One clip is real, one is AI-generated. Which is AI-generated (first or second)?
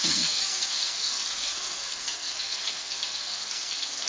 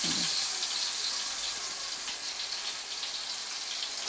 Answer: first